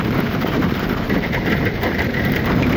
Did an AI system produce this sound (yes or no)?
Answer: yes